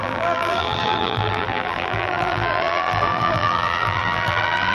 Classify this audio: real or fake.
fake